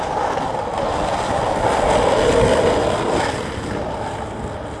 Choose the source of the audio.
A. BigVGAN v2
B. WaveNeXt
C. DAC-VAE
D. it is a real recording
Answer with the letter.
D